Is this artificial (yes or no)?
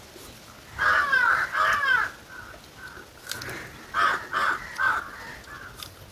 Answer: no